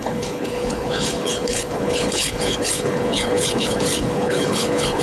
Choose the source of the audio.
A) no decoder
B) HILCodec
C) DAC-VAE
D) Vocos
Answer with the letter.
B